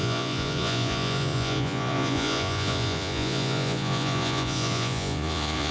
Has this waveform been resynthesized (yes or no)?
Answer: yes